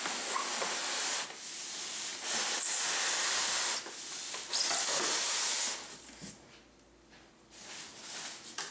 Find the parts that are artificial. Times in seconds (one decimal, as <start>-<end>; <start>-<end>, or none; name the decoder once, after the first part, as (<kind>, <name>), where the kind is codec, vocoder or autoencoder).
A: none